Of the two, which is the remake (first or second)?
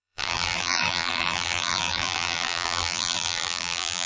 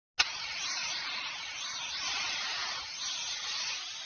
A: first